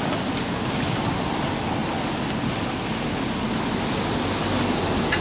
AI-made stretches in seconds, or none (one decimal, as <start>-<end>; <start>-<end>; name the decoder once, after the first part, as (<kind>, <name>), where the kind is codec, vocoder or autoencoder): none